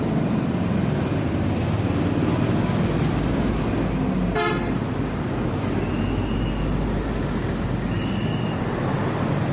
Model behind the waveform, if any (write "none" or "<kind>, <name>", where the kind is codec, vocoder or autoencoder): none